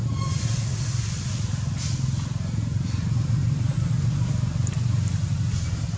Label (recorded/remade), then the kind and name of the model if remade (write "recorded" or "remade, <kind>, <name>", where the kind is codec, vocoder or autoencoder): recorded